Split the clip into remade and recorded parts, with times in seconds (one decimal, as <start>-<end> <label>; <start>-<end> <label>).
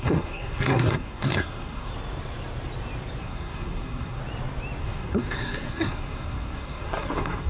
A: 0.0-1.9 remade; 1.9-3.2 recorded; 3.2-4.2 remade; 4.2-4.8 recorded; 4.8-7.5 remade